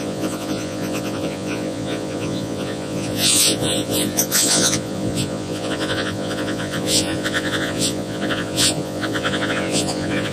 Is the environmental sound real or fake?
fake